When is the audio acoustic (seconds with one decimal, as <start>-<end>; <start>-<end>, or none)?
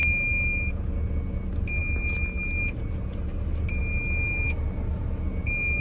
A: 0.0-5.8